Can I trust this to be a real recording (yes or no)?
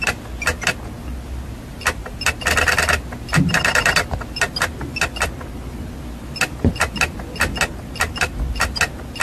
yes